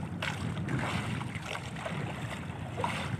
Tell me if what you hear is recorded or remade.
recorded